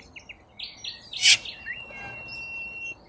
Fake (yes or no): no